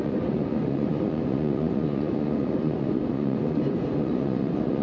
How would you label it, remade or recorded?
remade